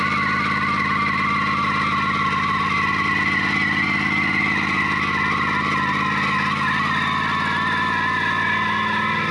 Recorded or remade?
recorded